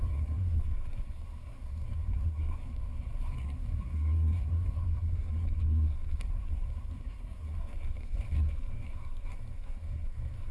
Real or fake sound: fake